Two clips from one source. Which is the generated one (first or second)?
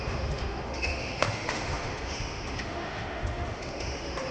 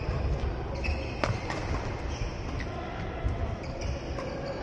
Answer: first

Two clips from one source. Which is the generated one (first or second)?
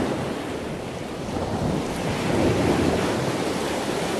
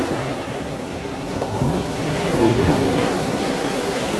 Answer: second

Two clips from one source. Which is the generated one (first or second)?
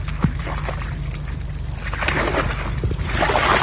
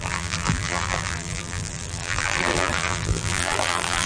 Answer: second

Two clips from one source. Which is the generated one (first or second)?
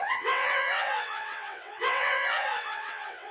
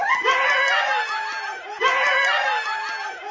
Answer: first